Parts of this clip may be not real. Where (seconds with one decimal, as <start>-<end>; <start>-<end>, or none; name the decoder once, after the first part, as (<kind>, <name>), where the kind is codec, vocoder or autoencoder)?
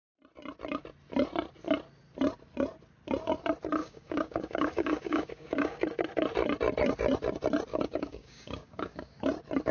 3.8-5.8 (codec, DAC); 7.7-9.2